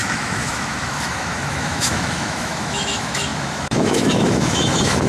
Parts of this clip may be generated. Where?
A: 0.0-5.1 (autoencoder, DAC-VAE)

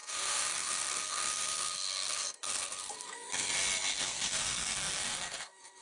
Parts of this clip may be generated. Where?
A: 0.0-3.5 (codec, SNAC); 3.9-5.8

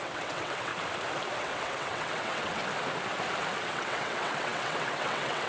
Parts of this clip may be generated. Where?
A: 0.0-0.7 (vocoder, WaveNeXt); 1.4-2.6; 3.6-5.5

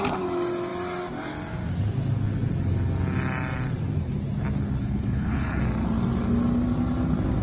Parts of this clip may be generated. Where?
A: 4.8-5.6 (codec, HILCodec)

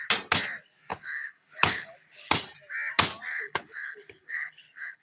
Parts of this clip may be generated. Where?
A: 0.9-2.3 (codec, HILCodec); 3.3-5.0